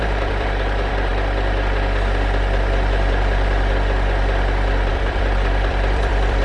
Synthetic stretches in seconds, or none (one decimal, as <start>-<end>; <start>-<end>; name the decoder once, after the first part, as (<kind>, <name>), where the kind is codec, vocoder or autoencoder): 0.0-1.1 (vocoder, BigVGAN v2); 4.9-6.4